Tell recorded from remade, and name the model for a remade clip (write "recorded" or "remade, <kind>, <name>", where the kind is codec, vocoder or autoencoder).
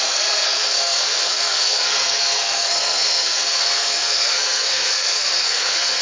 remade, codec, SNAC